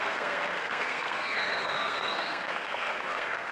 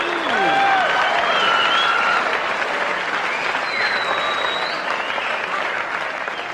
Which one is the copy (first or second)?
first